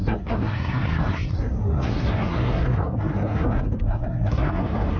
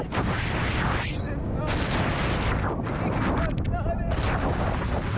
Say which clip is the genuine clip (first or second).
second